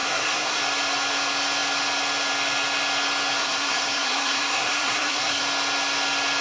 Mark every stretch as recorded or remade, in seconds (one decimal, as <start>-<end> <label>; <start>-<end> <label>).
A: 0.0-0.6 remade; 0.6-3.4 recorded; 3.4-5.4 remade; 5.4-6.4 recorded